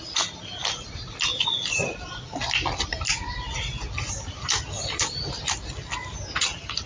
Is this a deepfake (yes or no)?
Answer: no